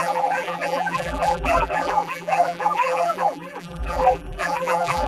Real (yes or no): no